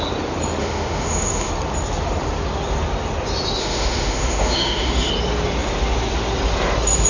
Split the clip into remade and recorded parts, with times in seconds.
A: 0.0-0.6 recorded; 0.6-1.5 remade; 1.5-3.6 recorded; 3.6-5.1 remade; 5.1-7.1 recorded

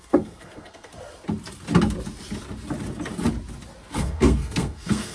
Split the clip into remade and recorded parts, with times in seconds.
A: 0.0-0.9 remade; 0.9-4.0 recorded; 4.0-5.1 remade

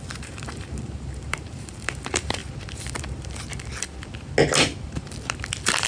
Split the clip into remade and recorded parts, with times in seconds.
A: 0.0-2.4 remade; 2.4-5.9 recorded